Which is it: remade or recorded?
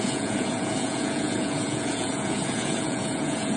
remade